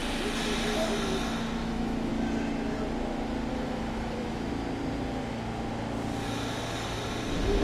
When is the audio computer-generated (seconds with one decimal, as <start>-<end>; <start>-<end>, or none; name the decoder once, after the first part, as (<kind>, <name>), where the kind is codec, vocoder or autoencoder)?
1.6-2.1 (autoencoder, DAC-VAE); 3.5-4.5